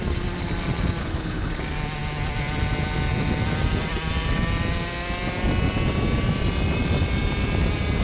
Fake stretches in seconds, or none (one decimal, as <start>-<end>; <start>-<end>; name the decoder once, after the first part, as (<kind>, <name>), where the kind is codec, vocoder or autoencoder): 1.0-1.5 (codec, HILCodec)